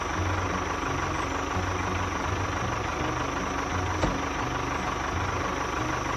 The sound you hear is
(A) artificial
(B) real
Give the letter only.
B